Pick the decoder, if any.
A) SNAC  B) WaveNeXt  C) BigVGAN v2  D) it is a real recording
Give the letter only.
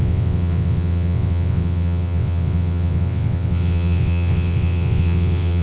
B